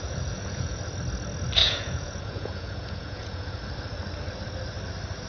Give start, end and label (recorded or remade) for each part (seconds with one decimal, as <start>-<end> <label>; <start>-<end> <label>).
0.0-0.8 remade; 0.8-1.6 recorded; 1.6-3.6 remade; 3.6-5.3 recorded